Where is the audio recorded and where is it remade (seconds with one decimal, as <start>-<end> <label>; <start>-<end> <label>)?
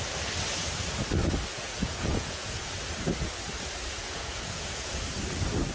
0.0-1.5 recorded; 1.5-2.7 remade; 2.7-4.0 recorded; 4.0-4.9 remade; 4.9-5.7 recorded